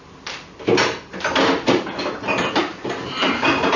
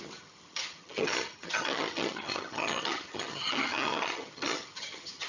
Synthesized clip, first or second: second